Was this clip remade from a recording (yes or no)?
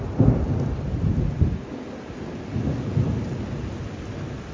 no